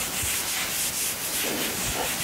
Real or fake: real